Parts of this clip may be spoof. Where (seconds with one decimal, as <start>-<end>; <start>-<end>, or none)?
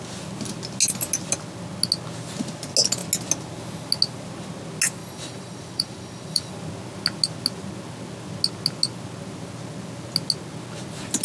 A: 5.0-6.5